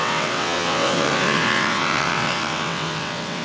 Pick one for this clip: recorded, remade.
remade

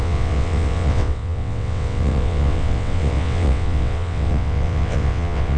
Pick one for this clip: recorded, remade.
remade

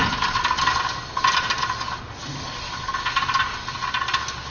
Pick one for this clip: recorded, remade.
recorded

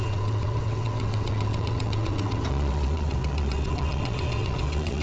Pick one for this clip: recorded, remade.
remade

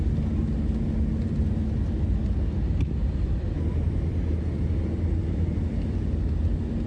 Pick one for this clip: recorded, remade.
recorded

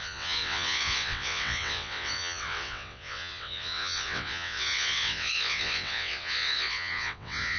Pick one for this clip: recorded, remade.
remade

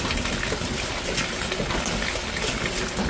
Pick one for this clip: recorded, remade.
recorded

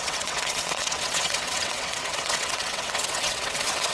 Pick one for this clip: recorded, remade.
remade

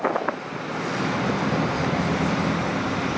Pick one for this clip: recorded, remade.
recorded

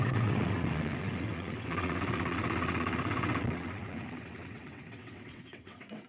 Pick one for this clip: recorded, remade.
remade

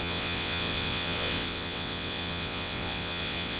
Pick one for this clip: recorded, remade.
remade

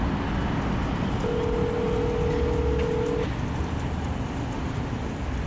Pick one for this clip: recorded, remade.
recorded